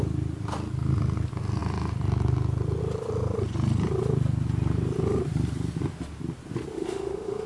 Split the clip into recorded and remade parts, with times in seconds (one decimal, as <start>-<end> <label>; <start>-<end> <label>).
0.0-6.7 recorded; 6.7-7.5 remade